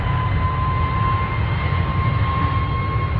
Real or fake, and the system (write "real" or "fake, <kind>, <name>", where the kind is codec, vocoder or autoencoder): real